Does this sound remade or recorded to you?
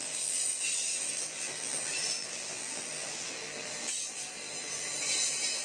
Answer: remade